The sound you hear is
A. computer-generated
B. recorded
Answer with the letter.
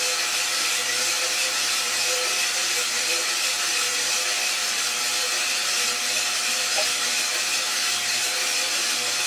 A